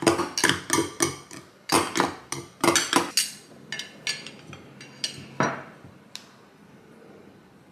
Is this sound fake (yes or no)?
no